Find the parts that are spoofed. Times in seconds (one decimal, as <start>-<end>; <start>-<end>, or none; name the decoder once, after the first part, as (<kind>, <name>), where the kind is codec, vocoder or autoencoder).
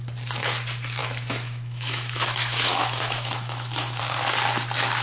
1.0-4.0 (autoencoder, DAC-VAE)